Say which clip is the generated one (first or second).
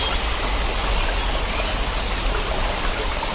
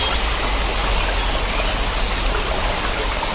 first